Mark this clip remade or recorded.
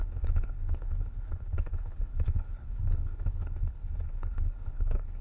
remade